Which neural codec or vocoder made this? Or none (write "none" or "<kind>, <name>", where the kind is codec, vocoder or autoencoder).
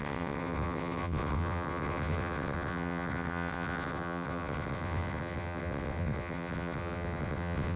vocoder, WaveNeXt